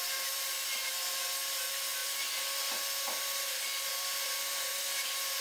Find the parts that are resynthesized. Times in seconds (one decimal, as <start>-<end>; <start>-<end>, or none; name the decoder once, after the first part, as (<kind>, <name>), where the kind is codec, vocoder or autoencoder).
none